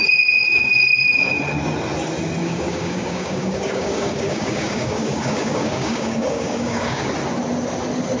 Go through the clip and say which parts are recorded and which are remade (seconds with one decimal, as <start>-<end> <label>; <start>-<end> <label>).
0.0-2.4 recorded; 2.4-7.1 remade; 7.1-8.2 recorded